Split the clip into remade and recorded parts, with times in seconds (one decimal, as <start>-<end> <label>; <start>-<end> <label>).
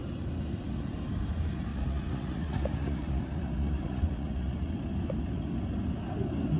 0.0-1.7 recorded; 1.7-4.7 remade; 4.7-6.6 recorded